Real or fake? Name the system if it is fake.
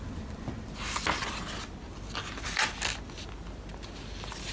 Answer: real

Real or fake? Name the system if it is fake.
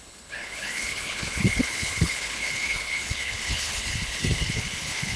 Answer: fake, codec, HILCodec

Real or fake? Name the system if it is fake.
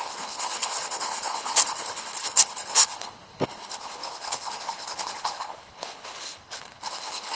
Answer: fake, codec, HILCodec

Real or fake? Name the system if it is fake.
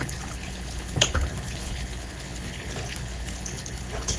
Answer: fake, codec, HILCodec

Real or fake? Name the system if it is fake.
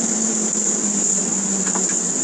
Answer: real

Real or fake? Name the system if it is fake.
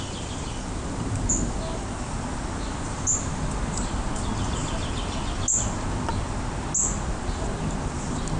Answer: real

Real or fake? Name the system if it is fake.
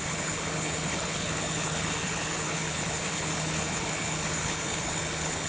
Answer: fake, codec, HILCodec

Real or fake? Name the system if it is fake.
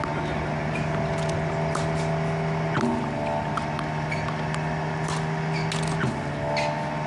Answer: real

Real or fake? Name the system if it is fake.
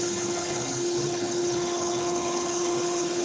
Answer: fake, codec, HILCodec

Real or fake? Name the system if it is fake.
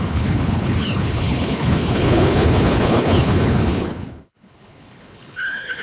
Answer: fake, codec, HILCodec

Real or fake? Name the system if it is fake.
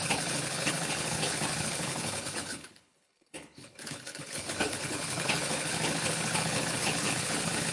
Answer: fake, codec, HILCodec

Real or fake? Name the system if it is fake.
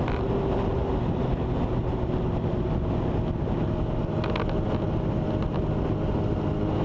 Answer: real